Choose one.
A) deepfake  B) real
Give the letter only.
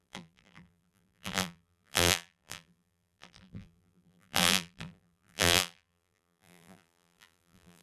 A